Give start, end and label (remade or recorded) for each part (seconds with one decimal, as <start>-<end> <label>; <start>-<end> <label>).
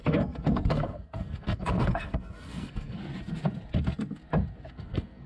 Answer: 0.0-3.0 remade; 3.0-4.7 recorded; 4.7-5.3 remade